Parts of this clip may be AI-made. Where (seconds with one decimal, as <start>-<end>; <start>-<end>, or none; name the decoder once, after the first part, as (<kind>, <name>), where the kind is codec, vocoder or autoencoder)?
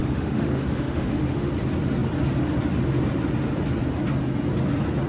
0.0-1.5 (autoencoder, DAC-VAE)